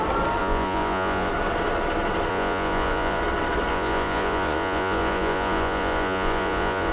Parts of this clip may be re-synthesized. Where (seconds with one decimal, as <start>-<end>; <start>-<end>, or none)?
0.4-1.3; 2.3-3.2; 3.7-6.9